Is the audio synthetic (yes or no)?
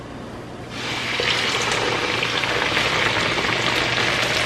no